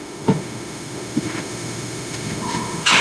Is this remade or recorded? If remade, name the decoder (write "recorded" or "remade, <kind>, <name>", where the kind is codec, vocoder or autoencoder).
remade, autoencoder, DAC-VAE